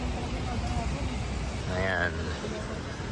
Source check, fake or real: real